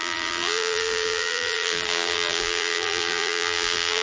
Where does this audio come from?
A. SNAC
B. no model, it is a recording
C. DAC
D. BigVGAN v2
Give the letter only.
D